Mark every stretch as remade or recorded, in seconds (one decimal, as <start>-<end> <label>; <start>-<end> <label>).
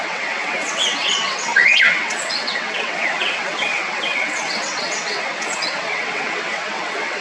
0.0-7.2 remade